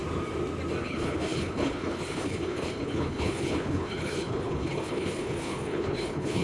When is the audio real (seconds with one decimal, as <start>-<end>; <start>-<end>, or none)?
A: 0.0-0.8